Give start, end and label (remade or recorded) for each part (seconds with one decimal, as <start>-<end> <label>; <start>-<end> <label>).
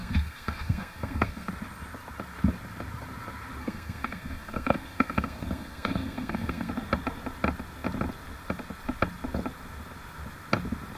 0.0-1.5 remade; 1.5-3.6 recorded; 3.6-6.7 remade; 6.7-11.0 recorded